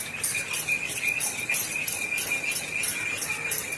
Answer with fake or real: real